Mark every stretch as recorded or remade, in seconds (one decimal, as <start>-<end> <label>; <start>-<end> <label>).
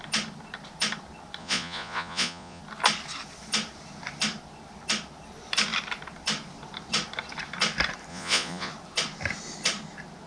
0.0-1.4 recorded; 1.4-2.6 remade; 2.6-8.1 recorded; 8.1-8.7 remade; 8.7-10.3 recorded